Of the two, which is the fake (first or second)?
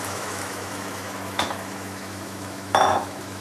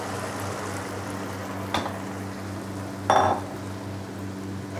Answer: first